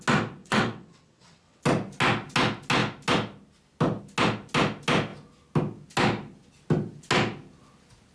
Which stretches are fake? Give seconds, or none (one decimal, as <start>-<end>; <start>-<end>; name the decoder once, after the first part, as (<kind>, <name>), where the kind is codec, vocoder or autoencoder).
0.4-1.6 (vocoder, WaveNeXt)